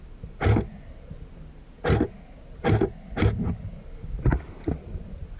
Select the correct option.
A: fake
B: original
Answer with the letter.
B